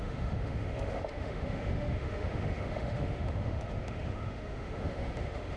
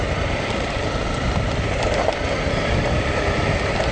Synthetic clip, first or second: first